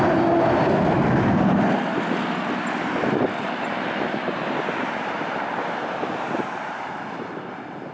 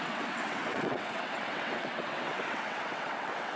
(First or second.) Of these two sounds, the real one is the first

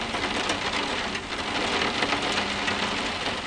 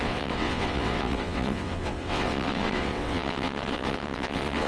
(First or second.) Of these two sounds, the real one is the first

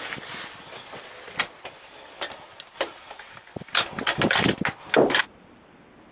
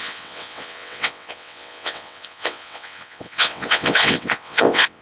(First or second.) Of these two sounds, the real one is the first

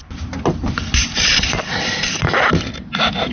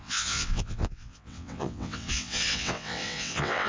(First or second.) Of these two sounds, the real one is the first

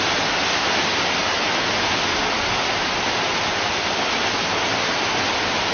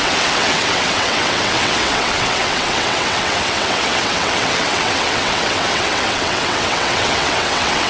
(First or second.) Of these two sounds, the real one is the first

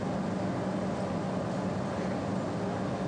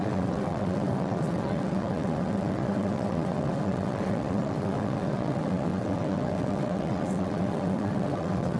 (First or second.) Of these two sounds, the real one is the first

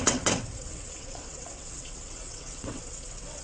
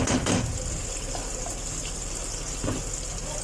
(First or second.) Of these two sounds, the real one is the second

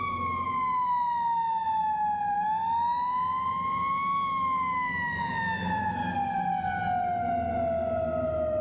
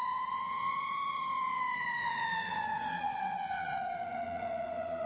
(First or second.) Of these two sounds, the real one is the first